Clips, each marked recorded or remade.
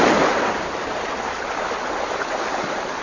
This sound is recorded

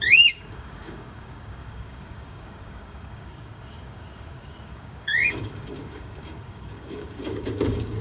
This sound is remade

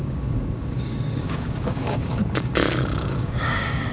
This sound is remade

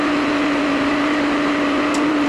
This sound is recorded